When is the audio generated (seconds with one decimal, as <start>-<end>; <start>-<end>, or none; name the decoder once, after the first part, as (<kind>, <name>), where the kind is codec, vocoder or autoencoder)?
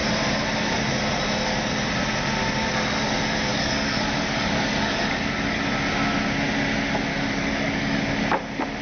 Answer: 3.5-5.6 (codec, DAC); 7.1-8.0